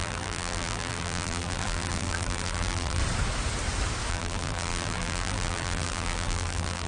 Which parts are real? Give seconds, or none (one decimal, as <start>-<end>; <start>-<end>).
3.0-4.1